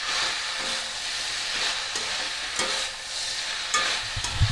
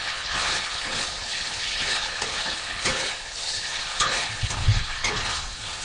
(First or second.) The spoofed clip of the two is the second